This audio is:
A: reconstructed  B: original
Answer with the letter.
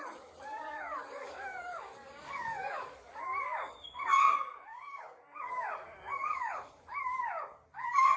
A